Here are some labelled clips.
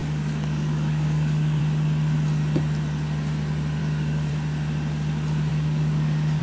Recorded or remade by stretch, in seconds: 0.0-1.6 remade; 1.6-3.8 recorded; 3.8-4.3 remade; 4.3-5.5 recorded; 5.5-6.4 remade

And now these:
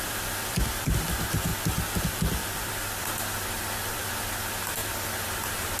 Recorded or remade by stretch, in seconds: 0.0-1.5 remade; 1.5-2.0 recorded; 2.0-4.8 remade; 4.8-5.3 recorded; 5.3-5.8 remade

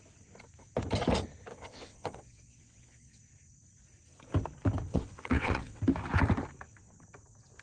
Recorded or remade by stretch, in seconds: 0.0-1.5 recorded; 1.5-3.2 remade; 3.2-4.9 recorded; 4.9-5.8 remade; 5.8-7.6 recorded